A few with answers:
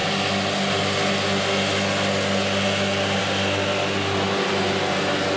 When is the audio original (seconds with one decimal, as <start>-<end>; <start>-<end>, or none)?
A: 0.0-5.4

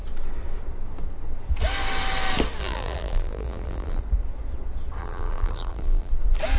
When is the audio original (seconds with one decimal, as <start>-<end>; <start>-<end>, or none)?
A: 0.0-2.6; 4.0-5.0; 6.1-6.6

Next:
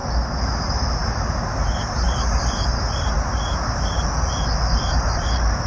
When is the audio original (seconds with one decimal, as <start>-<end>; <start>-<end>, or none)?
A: 0.0-0.6; 4.0-4.9

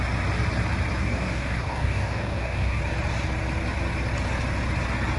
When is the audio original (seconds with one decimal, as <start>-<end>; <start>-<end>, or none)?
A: 0.0-1.0; 2.8-5.2

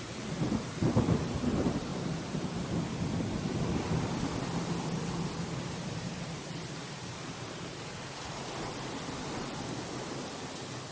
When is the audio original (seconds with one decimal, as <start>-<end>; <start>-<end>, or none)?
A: 1.9-5.6; 7.7-10.9

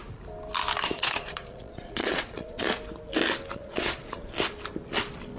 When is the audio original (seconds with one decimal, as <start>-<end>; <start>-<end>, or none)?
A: 0.0-0.9; 2.6-3.5; 4.3-5.4